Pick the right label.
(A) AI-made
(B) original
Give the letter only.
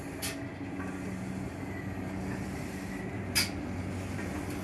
B